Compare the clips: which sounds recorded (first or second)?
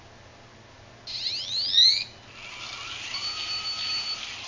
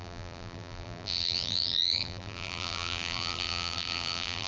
first